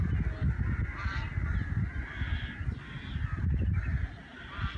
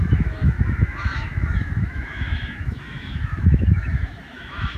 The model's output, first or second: second